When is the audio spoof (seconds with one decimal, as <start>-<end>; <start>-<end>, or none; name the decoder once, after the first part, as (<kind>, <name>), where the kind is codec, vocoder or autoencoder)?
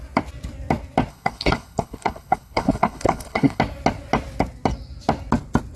1.1-3.6 (codec, HILCodec)